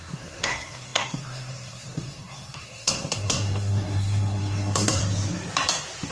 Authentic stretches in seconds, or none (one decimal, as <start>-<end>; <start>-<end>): 5.0-6.1